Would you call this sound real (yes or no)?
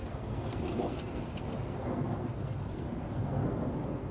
no